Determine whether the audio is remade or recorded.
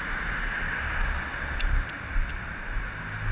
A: recorded